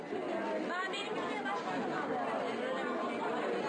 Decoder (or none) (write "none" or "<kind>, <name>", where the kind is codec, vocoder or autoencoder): none